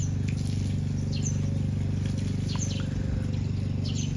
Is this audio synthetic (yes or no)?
no